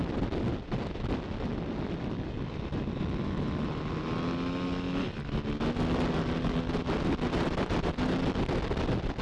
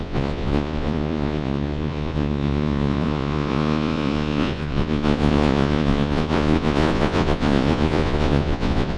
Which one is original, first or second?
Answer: first